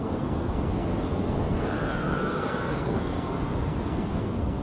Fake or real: fake